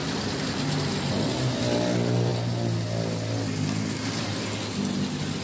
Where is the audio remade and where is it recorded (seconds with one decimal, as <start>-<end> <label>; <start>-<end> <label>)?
0.0-0.5 remade; 0.5-5.4 recorded